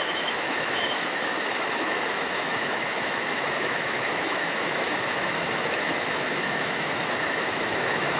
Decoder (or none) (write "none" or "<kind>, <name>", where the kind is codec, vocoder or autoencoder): autoencoder, DAC-VAE